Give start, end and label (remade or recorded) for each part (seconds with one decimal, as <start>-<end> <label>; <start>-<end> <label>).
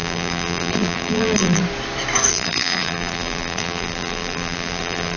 0.0-1.6 remade; 1.6-2.3 recorded; 2.3-5.2 remade